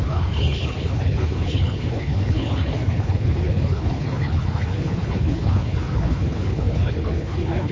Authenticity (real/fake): fake